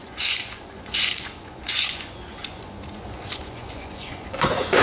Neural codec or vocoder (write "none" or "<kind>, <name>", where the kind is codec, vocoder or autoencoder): vocoder, Vocos